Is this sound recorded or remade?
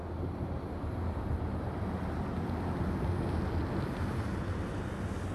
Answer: recorded